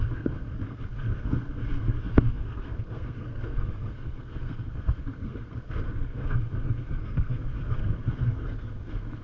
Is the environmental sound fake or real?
fake